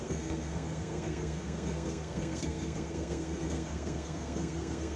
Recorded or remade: remade